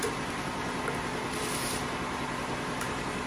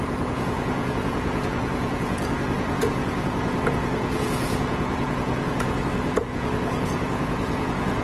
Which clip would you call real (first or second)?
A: first